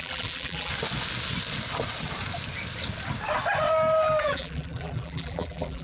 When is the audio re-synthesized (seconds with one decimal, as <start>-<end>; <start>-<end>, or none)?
0.0-0.7; 4.2-5.8